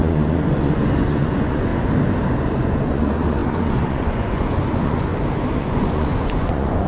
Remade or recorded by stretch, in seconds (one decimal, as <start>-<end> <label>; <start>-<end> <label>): 0.0-1.7 remade; 1.7-2.4 recorded; 2.4-5.1 remade; 5.1-5.6 recorded; 5.6-6.9 remade